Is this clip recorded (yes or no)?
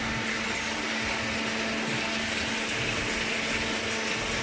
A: yes